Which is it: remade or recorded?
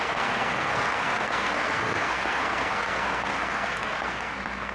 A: remade